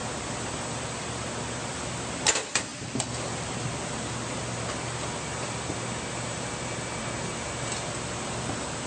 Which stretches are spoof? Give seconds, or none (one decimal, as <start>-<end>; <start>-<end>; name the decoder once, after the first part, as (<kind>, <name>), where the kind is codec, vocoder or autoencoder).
1.6-2.2 (vocoder, BigVGAN v2)